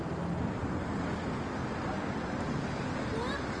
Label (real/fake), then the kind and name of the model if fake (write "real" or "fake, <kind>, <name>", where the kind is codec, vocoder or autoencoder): real